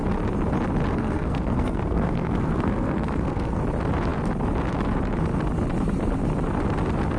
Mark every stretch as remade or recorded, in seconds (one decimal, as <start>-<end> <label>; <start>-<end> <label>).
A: 0.0-0.9 recorded; 0.9-3.6 remade; 3.6-7.2 recorded

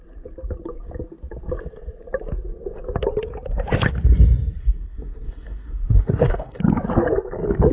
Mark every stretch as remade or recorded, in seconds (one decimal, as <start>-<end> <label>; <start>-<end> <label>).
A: 0.0-4.6 recorded; 4.6-6.6 remade; 6.6-7.7 recorded

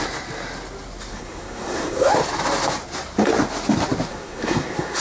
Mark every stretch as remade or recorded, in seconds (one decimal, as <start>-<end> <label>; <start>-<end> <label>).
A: 0.0-1.1 recorded; 1.1-2.1 remade; 2.1-4.1 recorded; 4.1-5.0 remade

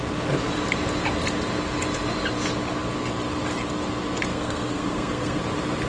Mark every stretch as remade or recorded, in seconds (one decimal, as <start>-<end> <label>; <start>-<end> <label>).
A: 0.0-4.3 recorded; 4.3-5.4 remade; 5.4-5.9 recorded

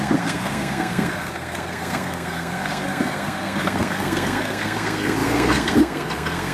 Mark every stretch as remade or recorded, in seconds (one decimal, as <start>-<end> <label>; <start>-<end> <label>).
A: 0.0-6.5 remade

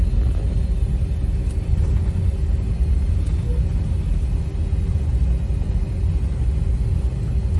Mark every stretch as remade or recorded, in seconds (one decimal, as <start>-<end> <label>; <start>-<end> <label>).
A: 0.0-7.6 recorded

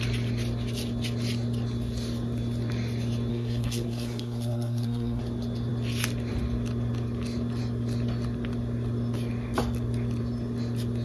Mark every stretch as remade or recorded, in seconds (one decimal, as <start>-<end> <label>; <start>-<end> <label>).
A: 0.0-3.3 recorded; 3.3-5.2 remade; 5.2-11.0 recorded